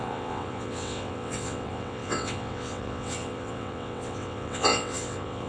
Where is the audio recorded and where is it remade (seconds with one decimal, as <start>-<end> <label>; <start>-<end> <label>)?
0.0-5.5 remade